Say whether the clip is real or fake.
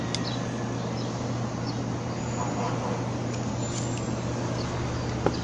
real